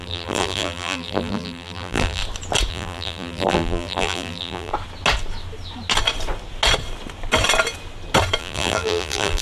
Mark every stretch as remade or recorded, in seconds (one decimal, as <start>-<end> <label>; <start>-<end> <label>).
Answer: 0.0-2.2 remade; 2.2-2.7 recorded; 2.7-4.7 remade; 4.7-8.4 recorded; 8.4-9.4 remade